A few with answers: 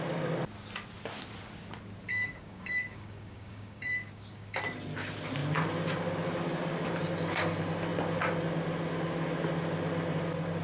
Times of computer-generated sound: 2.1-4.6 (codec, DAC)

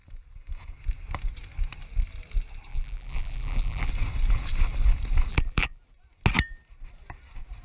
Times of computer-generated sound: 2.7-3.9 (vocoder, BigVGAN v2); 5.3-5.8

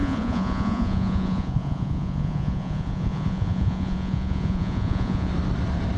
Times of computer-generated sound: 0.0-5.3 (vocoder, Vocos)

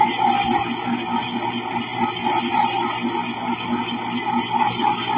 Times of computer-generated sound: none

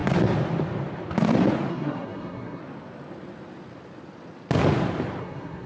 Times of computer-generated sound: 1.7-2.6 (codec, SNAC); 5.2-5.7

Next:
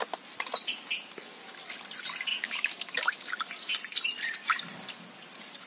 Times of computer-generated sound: 2.3-3.3 (codec, DAC)

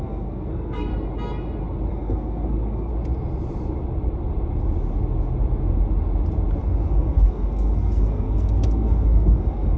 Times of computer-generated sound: 0.0-0.9 (codec, SNAC); 1.9-2.9; 6.6-9.8